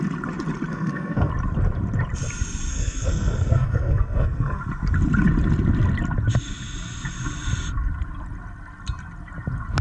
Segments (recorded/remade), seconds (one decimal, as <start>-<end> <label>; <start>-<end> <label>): 0.0-0.7 recorded; 0.7-1.3 remade; 1.3-2.7 recorded; 2.7-4.6 remade; 4.6-9.8 recorded